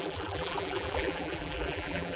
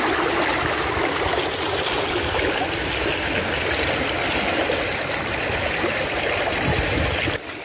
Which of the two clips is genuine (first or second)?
second